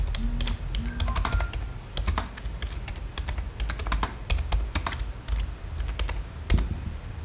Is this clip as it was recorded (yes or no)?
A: yes